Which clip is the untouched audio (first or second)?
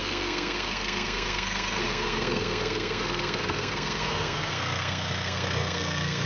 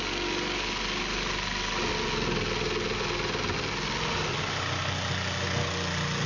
second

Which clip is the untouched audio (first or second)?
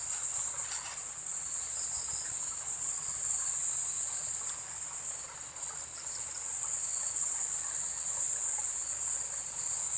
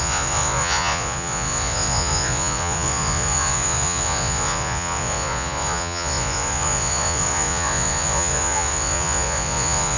first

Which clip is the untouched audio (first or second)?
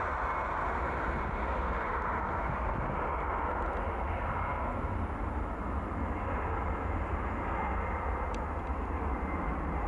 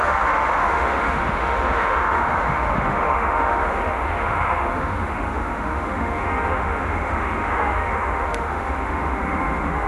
first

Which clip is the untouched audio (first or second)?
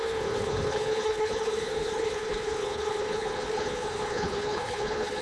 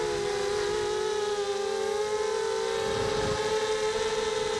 second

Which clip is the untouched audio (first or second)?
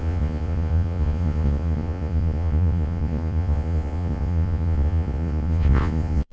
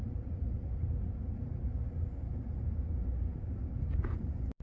second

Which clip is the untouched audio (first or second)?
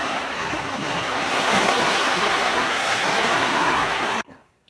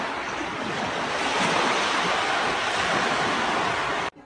second